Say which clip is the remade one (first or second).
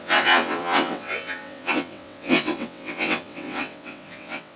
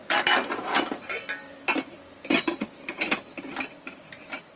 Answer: first